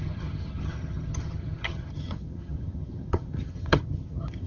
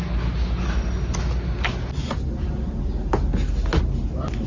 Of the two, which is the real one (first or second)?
second